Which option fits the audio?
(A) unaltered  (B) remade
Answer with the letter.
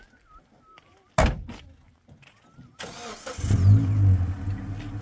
A